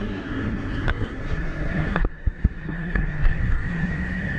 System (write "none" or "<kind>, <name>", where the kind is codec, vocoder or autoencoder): codec, SNAC